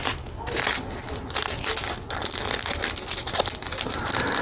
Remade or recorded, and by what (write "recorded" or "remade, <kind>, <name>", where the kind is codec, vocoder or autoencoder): recorded